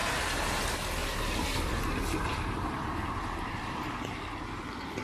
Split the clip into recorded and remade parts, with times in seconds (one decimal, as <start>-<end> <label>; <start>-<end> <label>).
0.0-1.0 recorded; 1.0-4.0 remade; 4.0-5.0 recorded